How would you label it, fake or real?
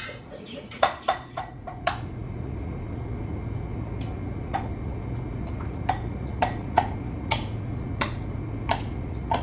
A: fake